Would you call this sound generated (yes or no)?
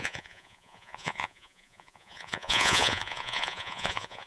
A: yes